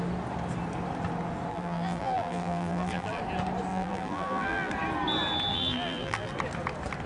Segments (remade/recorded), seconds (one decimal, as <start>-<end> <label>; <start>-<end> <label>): 0.0-1.5 recorded; 1.5-3.2 remade; 3.2-3.7 recorded; 3.7-4.7 remade; 4.7-5.5 recorded; 5.5-6.3 remade; 6.3-7.1 recorded